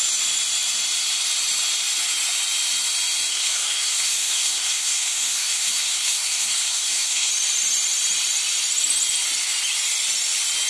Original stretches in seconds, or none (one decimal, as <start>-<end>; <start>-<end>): 0.0-3.3; 7.3-10.7